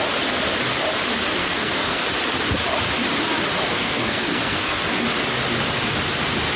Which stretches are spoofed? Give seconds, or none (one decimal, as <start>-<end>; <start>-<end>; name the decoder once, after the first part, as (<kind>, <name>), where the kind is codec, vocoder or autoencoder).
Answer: 1.4-2.0 (codec, SNAC); 3.7-4.8

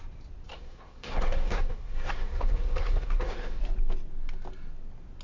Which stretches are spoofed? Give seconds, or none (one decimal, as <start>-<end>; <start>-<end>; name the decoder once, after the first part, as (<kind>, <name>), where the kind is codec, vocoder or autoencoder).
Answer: 0.5-3.6 (codec, SNAC)

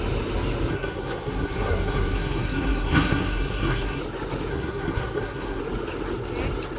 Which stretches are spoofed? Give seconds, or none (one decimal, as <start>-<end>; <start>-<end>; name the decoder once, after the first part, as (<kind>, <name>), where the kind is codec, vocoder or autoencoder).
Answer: 0.7-4.0 (codec, SNAC); 4.5-5.6